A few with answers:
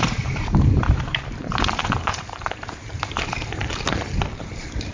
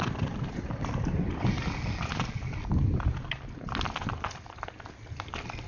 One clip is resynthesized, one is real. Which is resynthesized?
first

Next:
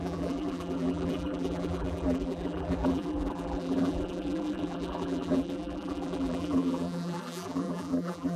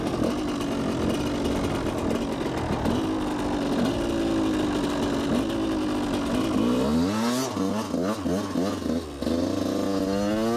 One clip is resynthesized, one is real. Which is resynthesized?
first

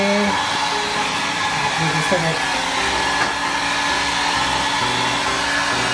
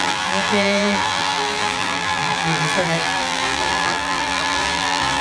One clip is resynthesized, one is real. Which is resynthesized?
second